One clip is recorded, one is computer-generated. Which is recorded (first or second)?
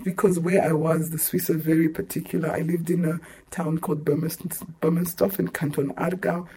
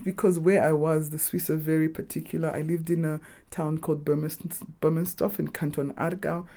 second